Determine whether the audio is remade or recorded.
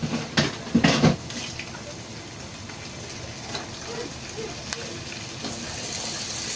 recorded